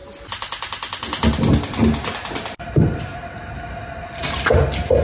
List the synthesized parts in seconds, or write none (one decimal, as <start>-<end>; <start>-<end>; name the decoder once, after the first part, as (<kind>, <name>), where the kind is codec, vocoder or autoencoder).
none